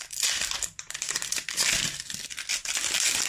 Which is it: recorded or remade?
recorded